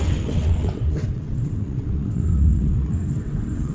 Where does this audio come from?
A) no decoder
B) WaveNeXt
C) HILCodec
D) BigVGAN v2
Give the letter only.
B